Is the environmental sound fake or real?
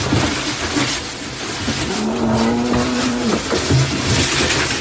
real